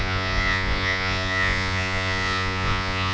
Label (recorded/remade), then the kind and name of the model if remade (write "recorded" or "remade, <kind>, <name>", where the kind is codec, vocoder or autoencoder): remade, vocoder, Vocos